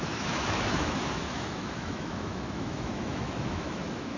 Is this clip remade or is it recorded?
remade